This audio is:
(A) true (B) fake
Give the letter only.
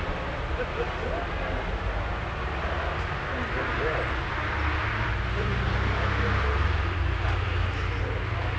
A